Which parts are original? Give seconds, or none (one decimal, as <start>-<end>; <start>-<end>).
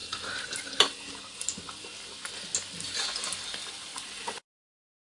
0.0-5.0